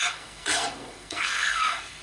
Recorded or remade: remade